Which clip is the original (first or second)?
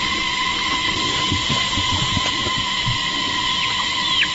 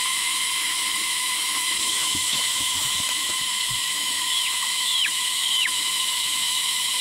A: first